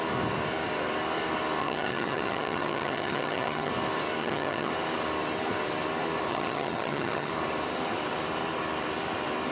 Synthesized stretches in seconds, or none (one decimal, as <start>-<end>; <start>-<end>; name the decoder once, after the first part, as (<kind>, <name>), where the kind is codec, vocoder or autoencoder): 1.6-3.7 (vocoder, HiFi-GAN); 4.2-4.7; 6.3-7.3